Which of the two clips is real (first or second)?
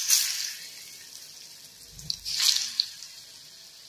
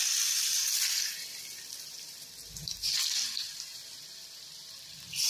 first